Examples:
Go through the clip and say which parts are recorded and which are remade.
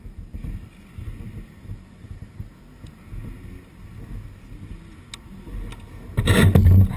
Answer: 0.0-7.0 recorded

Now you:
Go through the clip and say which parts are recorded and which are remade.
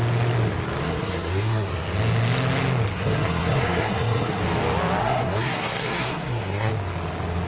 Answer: 0.0-0.8 recorded; 0.8-1.7 remade; 1.7-2.9 recorded; 2.9-4.4 remade; 4.4-5.0 recorded; 5.0-6.7 remade; 6.7-7.5 recorded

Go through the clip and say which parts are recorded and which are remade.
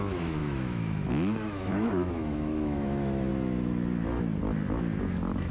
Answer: 0.0-3.3 remade; 3.3-5.1 recorded; 5.1-5.5 remade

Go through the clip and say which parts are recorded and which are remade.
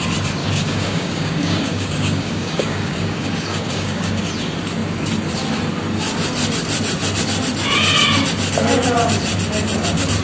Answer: 0.0-0.4 recorded; 0.4-4.2 remade; 4.2-10.2 recorded